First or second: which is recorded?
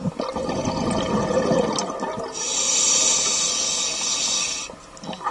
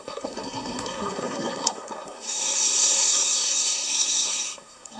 first